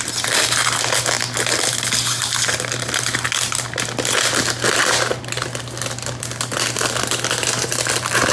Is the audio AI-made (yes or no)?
no